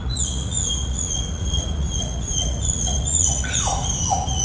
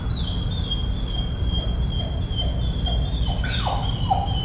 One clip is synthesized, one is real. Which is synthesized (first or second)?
first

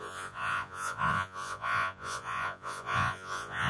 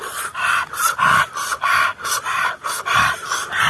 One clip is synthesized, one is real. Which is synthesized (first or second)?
first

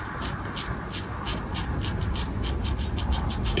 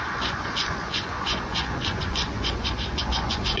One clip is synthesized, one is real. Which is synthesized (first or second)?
second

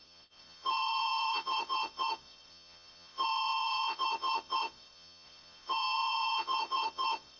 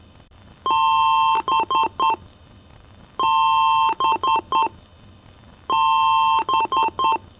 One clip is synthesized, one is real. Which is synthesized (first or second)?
first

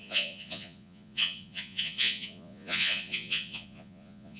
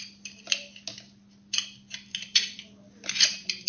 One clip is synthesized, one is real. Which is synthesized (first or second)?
first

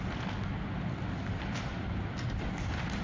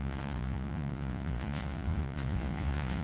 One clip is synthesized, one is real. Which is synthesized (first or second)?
second